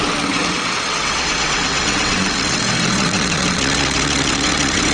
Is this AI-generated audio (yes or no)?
yes